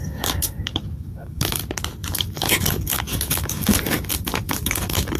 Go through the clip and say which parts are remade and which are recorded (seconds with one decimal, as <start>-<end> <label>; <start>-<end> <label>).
0.0-1.6 remade; 1.6-2.1 recorded; 2.1-5.2 remade